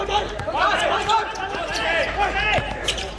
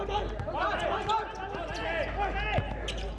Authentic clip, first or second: second